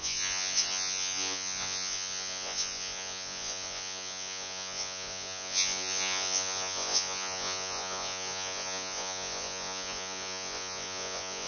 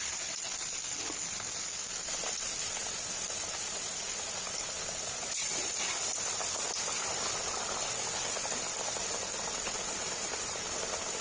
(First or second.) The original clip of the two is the second